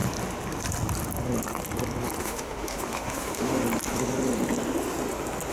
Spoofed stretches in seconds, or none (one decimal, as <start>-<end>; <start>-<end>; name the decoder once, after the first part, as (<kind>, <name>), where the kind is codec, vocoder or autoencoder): 2.2-3.6 (autoencoder, DAC-VAE)